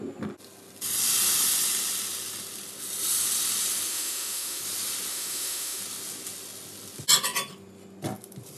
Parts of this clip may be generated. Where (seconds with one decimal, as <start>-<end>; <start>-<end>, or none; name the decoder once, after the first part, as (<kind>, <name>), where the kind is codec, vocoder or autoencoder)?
3.9-4.6 (autoencoder, DAC-VAE); 5.1-5.8